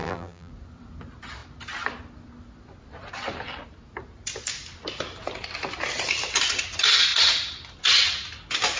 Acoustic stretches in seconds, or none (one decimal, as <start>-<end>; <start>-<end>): 0.5-8.8